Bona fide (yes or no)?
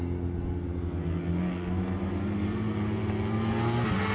yes